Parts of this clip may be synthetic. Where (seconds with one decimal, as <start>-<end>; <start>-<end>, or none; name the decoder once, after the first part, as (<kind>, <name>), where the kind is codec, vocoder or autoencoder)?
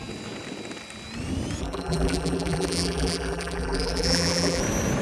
1.6-4.6 (vocoder, BigVGAN v2)